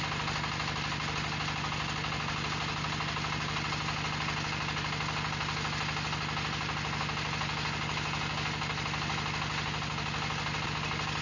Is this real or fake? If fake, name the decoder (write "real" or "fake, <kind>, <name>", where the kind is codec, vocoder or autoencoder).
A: real